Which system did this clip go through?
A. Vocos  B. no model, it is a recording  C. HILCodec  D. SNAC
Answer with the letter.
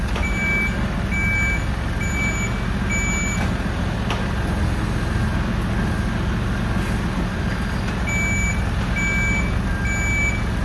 B